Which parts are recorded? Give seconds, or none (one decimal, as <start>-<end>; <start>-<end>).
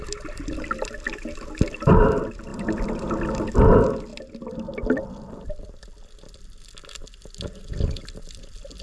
0.0-8.8